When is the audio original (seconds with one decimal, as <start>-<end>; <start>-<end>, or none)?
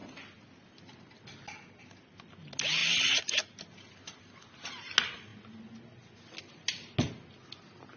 0.0-2.8; 3.6-8.0